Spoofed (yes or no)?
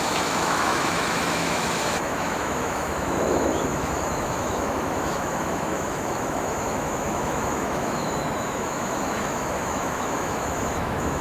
yes